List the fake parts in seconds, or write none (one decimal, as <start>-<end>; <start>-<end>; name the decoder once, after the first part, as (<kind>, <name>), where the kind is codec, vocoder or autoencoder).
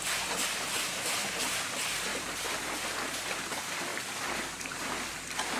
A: 2.1-2.7 (vocoder, BigVGAN v2)